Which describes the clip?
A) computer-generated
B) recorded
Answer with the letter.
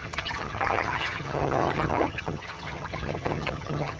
A